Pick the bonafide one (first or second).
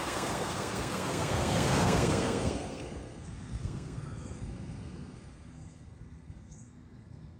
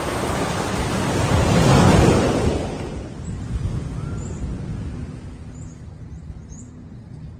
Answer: second